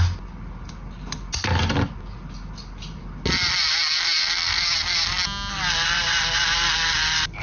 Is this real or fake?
real